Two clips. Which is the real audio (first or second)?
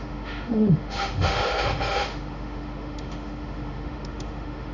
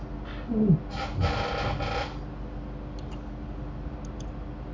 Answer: second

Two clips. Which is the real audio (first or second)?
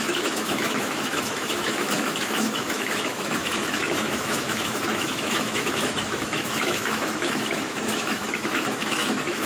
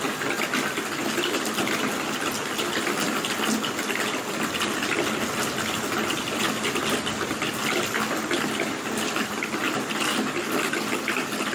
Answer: second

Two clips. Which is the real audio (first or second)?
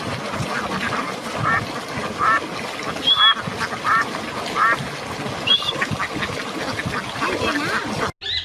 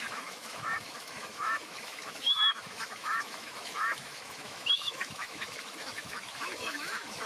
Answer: first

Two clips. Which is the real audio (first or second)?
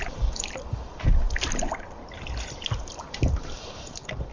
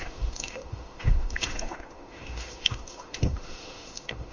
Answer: first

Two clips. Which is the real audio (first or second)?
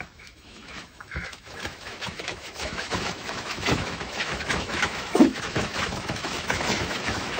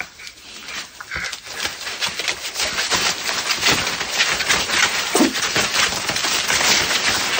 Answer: second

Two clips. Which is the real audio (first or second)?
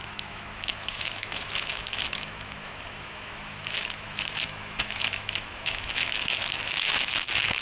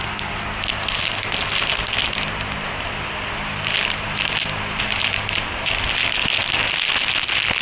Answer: second